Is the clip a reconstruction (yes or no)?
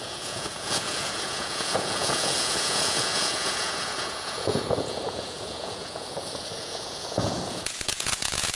yes